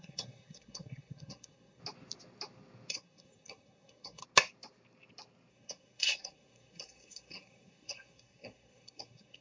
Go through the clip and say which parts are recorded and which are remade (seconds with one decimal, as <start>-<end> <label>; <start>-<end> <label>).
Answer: 0.0-1.8 remade; 1.8-2.9 recorded; 2.9-4.2 remade; 4.2-5.5 recorded; 5.5-9.4 remade